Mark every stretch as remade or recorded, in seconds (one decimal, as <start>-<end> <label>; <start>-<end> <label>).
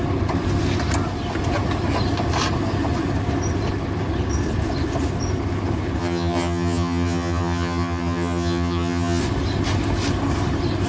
0.0-6.0 recorded; 6.0-9.2 remade; 9.2-10.9 recorded